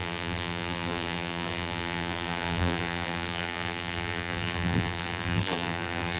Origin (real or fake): fake